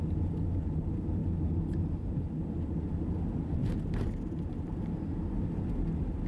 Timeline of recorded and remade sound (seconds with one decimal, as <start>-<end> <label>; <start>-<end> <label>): 0.0-1.2 recorded; 1.2-2.8 remade; 2.8-3.6 recorded; 3.6-5.4 remade; 5.4-6.3 recorded